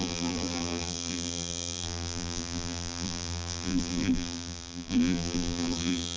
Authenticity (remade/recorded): remade